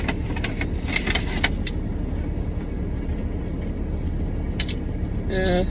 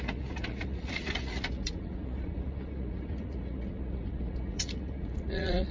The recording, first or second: first